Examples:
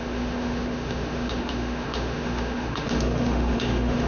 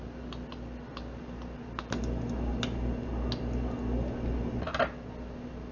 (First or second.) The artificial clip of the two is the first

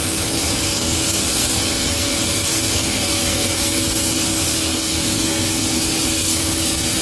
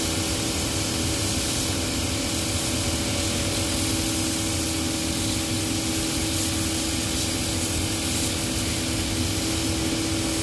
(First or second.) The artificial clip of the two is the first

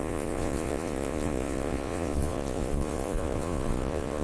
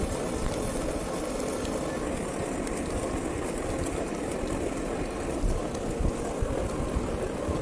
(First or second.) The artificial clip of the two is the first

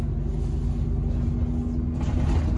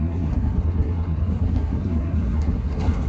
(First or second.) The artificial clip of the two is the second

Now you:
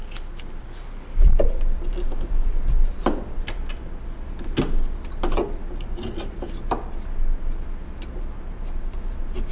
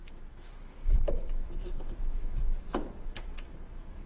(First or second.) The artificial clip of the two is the second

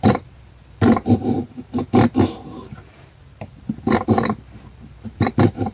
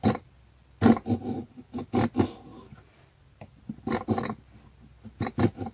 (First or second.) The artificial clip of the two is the first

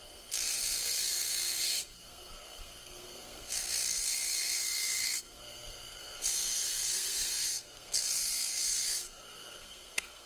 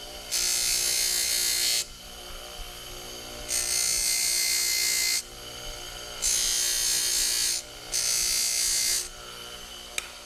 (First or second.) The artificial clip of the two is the first